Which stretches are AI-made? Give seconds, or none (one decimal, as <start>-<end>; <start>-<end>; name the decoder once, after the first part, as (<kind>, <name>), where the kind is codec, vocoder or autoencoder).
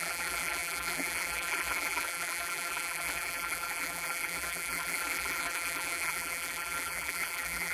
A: 0.0-7.7 (vocoder, BigVGAN v2)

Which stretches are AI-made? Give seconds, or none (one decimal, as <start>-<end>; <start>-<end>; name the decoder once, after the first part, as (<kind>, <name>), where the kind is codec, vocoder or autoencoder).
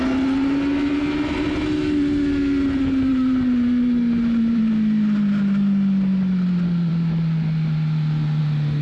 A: 3.1-4.6 (vocoder, BigVGAN v2)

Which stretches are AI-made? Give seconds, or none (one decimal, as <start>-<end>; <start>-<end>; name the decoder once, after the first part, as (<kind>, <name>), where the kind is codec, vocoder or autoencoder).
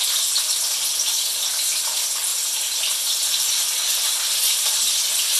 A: 2.3-3.6 (vocoder, BigVGAN v2)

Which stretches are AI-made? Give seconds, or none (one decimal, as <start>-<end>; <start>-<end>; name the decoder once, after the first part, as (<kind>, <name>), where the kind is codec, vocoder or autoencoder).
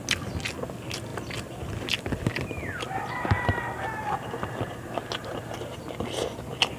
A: 5.2-5.8 (vocoder, BigVGAN v2)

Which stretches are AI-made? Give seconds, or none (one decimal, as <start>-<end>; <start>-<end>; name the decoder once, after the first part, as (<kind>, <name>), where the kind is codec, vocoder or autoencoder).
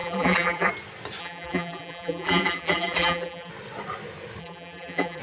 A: 0.0-0.7 (vocoder, BigVGAN v2); 1.2-3.5; 4.4-5.2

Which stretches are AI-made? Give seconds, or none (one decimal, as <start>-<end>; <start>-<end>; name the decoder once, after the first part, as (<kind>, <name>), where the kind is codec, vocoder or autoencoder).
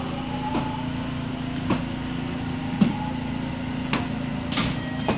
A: none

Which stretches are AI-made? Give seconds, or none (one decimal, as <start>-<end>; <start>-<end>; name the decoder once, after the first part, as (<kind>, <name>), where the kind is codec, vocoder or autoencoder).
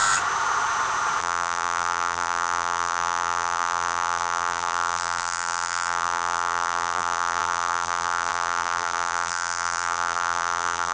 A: 1.2-10.9 (vocoder, BigVGAN v2)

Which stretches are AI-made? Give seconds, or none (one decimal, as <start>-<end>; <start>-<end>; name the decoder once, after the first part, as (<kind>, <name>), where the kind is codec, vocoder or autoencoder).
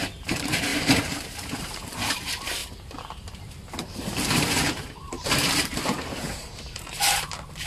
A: 0.0-2.6 (vocoder, BigVGAN v2); 3.8-7.7